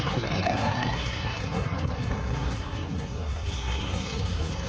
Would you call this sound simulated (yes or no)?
yes